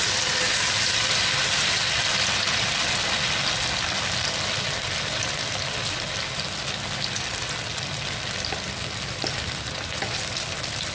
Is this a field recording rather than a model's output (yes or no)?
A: yes